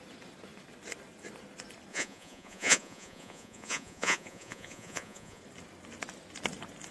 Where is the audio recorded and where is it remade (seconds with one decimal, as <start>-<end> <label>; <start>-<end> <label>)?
0.0-1.9 recorded; 1.9-5.4 remade; 5.4-6.9 recorded